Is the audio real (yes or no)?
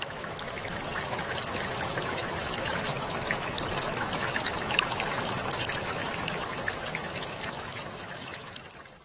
no